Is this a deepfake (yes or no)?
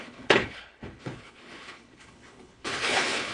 yes